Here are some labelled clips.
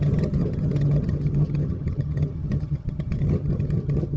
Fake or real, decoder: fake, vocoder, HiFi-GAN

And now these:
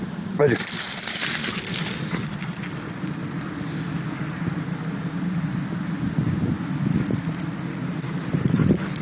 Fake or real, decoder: real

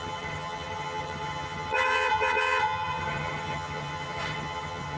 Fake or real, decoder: fake, vocoder, HiFi-GAN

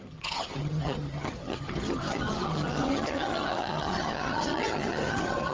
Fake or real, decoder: fake, vocoder, HiFi-GAN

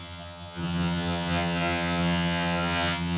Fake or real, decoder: fake, vocoder, HiFi-GAN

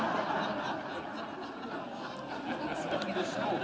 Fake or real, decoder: real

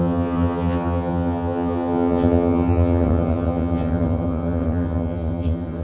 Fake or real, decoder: fake, vocoder, HiFi-GAN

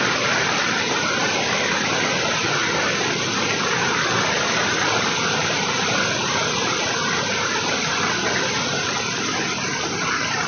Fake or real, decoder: real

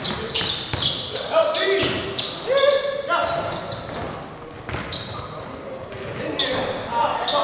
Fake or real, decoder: real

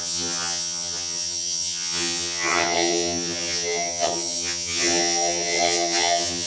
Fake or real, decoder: fake, vocoder, HiFi-GAN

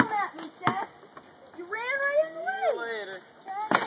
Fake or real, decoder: real